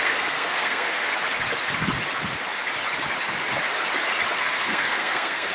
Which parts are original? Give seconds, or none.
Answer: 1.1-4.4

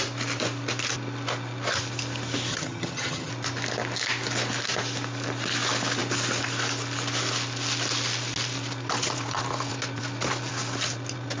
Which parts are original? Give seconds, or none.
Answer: 0.0-2.5; 3.3-11.4

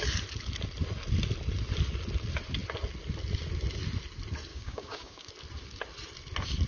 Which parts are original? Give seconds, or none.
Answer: 0.0-4.5; 5.3-6.7

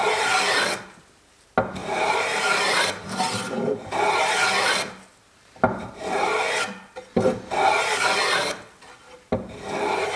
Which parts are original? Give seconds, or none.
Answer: 0.0-1.8; 3.2-5.1; 6.3-10.2

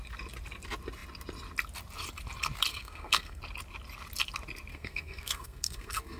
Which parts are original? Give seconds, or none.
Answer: 0.0-2.7; 3.4-4.7

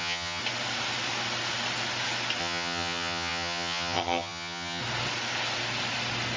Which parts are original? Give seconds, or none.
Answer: 0.4-2.4; 4.8-6.4

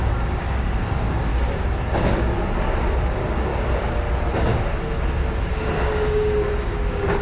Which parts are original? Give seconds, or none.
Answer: 1.3-3.1; 3.5-5.5